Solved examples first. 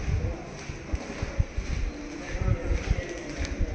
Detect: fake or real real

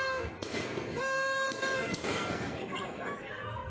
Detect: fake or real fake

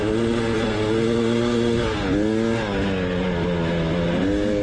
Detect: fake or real real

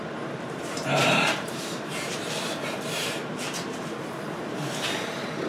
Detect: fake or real fake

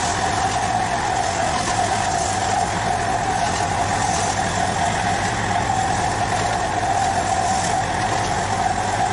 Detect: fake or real real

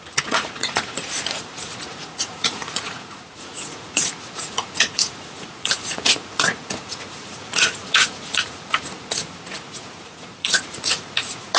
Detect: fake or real fake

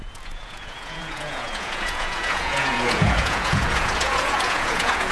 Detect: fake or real fake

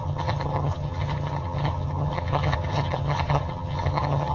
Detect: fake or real fake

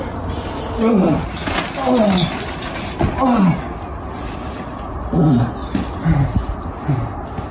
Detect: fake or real real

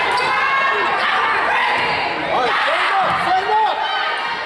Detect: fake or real real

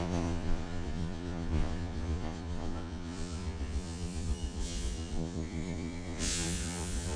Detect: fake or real fake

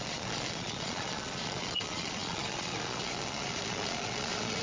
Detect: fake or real fake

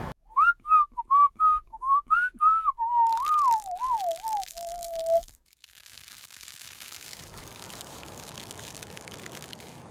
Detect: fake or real fake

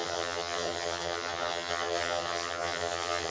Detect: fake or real fake